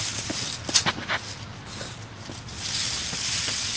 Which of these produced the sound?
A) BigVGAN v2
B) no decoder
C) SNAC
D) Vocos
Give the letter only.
B